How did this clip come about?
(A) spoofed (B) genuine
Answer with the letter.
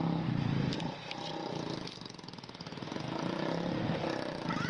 B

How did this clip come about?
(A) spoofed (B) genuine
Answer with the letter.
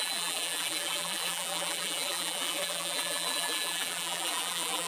A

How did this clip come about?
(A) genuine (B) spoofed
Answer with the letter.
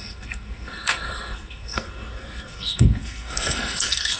B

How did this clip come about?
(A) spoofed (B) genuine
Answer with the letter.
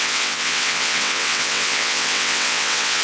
A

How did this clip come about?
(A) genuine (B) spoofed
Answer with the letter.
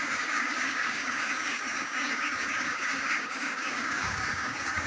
B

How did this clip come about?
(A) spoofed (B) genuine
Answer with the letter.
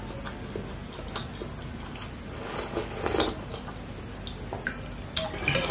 B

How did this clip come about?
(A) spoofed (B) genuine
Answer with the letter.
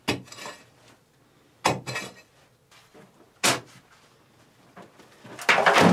B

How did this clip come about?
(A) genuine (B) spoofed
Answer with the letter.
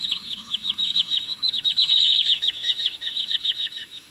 B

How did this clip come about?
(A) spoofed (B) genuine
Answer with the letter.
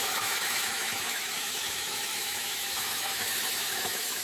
A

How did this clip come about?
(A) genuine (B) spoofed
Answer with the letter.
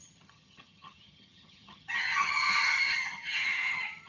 B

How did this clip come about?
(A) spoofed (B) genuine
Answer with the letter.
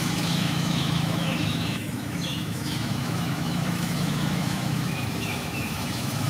A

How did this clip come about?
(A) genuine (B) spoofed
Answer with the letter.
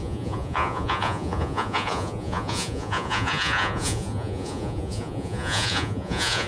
B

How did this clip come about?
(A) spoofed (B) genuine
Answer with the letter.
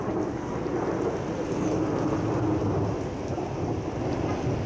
B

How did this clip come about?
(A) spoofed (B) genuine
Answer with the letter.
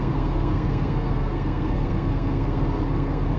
A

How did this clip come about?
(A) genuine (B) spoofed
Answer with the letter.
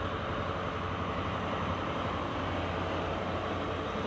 A